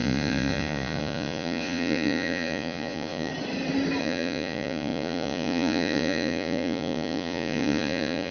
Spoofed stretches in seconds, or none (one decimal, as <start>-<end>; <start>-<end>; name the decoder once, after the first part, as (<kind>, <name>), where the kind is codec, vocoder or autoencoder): 0.0-3.3 (vocoder, Vocos); 4.0-8.3